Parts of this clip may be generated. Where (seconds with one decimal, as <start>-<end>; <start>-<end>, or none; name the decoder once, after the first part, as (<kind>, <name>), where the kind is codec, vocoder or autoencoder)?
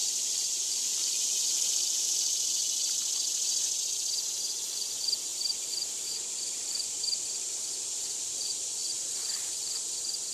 0.0-2.6 (vocoder, BigVGAN v2); 4.3-10.3